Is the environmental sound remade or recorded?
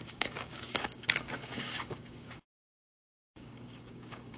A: remade